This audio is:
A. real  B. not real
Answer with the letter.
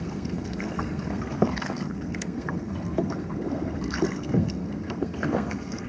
B